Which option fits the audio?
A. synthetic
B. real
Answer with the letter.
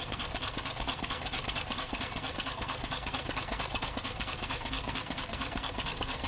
A